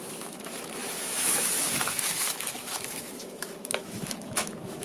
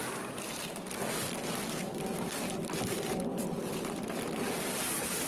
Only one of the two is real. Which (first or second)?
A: second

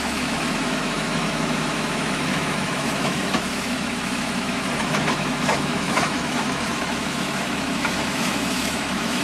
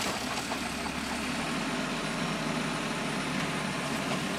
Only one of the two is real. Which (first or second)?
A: second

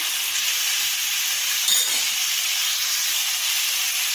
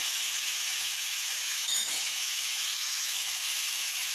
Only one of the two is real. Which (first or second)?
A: first